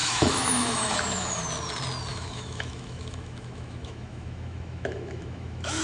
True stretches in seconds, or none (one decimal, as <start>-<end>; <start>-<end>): 1.4-2.1